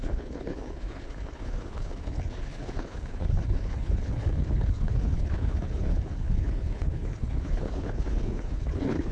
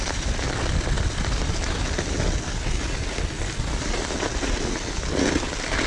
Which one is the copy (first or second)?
first